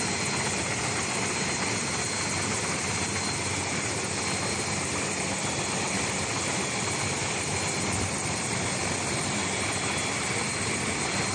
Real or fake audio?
real